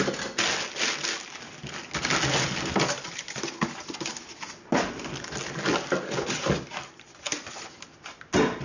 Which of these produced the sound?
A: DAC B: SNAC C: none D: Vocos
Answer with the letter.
C